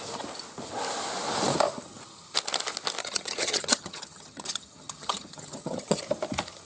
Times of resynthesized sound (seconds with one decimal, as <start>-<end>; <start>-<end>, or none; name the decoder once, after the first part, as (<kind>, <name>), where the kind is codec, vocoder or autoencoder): 3.0-6.0 (vocoder, HiFi-GAN)